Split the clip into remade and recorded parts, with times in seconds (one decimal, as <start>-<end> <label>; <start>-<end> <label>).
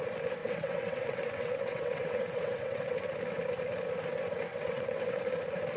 0.0-0.4 recorded; 0.4-2.9 remade; 2.9-4.5 recorded; 4.5-5.2 remade; 5.2-5.8 recorded